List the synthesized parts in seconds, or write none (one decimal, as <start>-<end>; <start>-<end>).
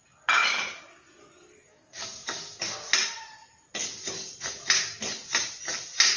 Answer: 1.7-2.6